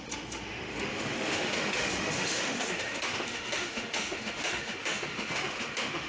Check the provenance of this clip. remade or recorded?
remade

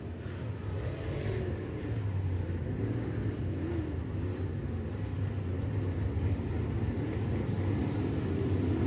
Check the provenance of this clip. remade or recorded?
recorded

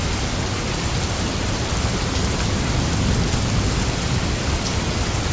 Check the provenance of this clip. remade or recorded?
recorded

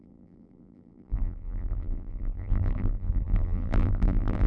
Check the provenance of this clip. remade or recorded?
remade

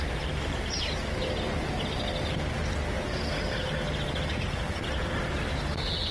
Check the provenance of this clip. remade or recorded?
recorded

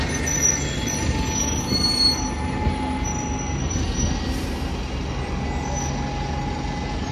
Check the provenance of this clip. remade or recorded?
recorded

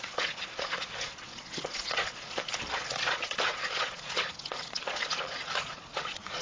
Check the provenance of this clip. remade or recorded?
remade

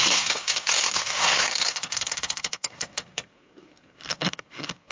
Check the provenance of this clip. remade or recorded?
remade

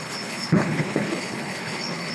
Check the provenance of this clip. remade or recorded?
remade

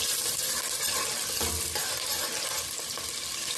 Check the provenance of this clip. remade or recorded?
recorded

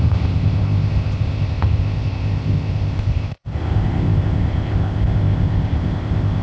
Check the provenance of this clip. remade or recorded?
remade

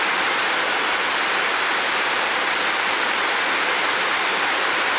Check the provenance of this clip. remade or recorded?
remade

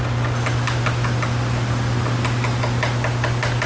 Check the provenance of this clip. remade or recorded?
recorded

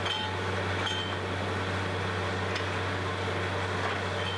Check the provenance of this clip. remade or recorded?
recorded